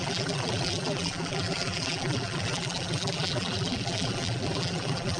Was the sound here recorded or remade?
remade